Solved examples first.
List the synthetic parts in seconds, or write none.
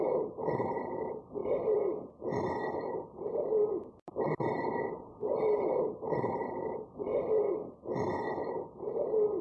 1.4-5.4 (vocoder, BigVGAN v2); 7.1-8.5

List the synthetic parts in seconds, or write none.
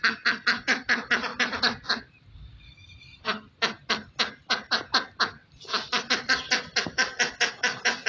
1.3-2.6 (vocoder, BigVGAN v2); 5.4-6.0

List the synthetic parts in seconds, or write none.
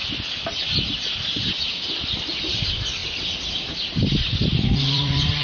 2.2-5.4 (vocoder, BigVGAN v2)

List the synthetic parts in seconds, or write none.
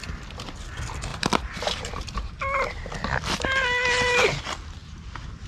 1.1-2.3 (vocoder, BigVGAN v2); 4.8-5.5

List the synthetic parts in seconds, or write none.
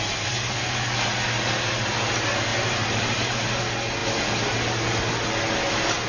2.5-3.6 (vocoder, BigVGAN v2)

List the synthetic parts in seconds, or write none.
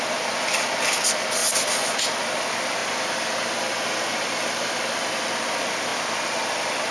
0.0-1.4 (vocoder, BigVGAN v2); 2.0-2.8; 3.4-6.9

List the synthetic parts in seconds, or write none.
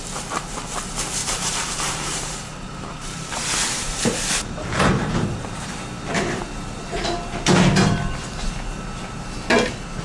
1.2-5.5 (vocoder, BigVGAN v2)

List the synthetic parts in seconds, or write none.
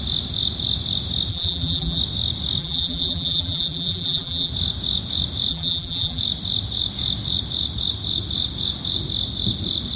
1.3-2.0 (vocoder, BigVGAN v2); 2.6-4.5; 5.5-6.2